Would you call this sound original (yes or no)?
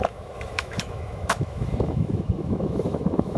no